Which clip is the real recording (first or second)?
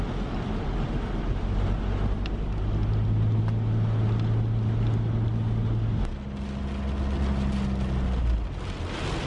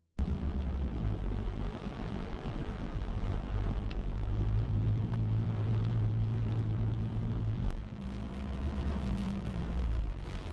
first